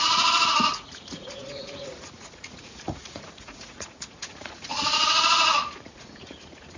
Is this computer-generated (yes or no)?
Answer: yes